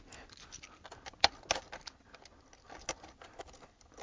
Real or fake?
real